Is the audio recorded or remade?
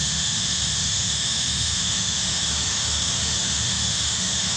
remade